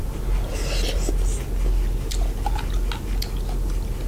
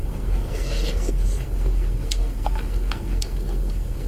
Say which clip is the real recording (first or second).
first